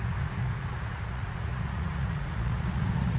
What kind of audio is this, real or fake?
fake